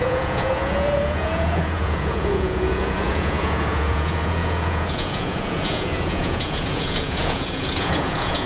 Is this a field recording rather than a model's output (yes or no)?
no